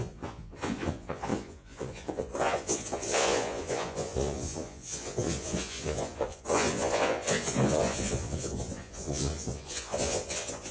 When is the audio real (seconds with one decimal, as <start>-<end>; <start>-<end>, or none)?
none